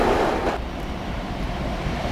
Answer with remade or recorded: remade